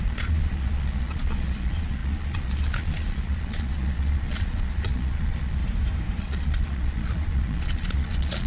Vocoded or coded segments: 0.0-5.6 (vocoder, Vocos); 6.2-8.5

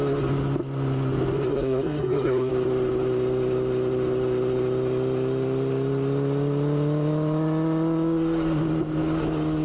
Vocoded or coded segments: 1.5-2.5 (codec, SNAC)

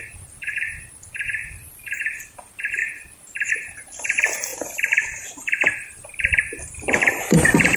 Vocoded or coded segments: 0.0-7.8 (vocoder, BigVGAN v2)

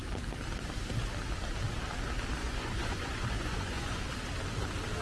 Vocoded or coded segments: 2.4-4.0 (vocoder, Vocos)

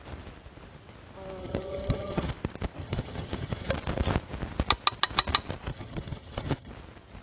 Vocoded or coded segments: 1.4-2.3 (vocoder, HiFi-GAN); 2.8-3.7; 5.7-6.7